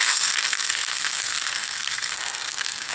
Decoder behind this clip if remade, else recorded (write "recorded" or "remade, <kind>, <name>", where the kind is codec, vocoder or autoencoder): remade, codec, SNAC